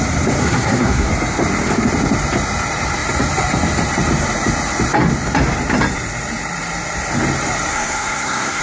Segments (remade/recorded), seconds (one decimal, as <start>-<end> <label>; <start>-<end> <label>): 0.0-0.4 recorded; 0.4-1.1 remade; 1.1-7.7 recorded; 7.7-8.6 remade